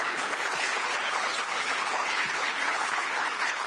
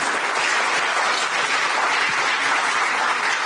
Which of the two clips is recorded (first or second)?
second